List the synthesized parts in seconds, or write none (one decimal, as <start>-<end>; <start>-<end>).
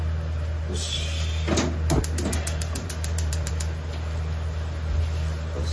2.3-3.5